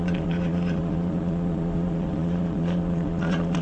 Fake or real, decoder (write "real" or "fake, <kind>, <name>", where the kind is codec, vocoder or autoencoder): fake, vocoder, Vocos